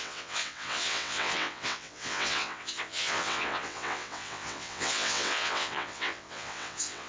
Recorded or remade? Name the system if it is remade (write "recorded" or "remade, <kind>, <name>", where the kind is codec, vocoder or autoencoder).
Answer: remade, vocoder, WaveNeXt